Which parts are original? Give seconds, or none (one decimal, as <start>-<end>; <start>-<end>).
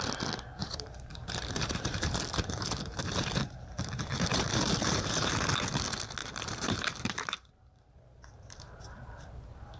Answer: 0.0-0.6; 5.3-6.2; 9.1-9.8